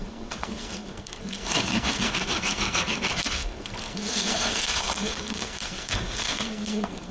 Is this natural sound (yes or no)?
no